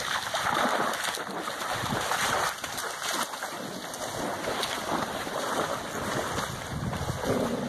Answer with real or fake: real